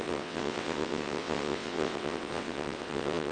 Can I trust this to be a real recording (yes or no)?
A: no